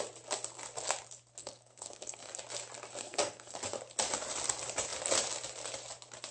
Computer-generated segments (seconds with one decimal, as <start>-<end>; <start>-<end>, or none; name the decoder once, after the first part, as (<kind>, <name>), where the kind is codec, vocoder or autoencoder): 1.4-2.4 (codec, SNAC); 3.0-3.6